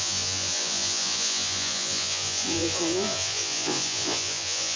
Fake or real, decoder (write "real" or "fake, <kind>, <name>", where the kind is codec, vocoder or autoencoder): fake, vocoder, Vocos